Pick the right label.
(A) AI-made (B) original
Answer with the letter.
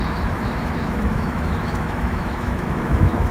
A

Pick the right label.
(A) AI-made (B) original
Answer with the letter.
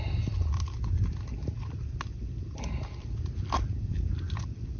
B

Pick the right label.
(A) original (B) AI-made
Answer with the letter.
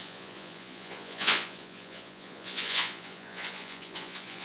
B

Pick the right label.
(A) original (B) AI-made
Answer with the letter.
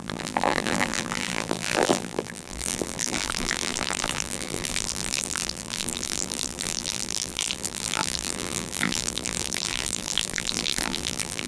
B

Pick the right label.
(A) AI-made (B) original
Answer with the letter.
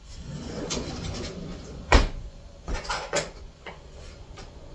A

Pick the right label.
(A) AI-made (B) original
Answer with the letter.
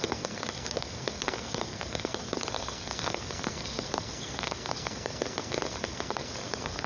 A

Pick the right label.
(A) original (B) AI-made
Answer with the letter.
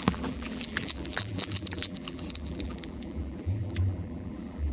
B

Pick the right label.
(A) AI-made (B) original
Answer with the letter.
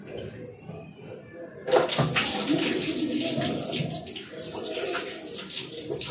B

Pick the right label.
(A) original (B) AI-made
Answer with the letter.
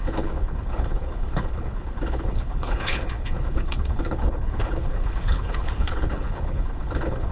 B